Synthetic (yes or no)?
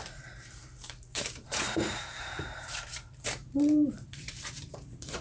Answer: yes